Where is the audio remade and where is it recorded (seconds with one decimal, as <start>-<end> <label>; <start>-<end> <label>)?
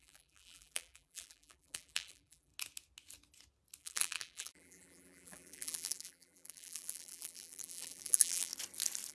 0.0-2.5 remade; 2.5-3.8 recorded; 3.8-8.5 remade; 8.5-9.1 recorded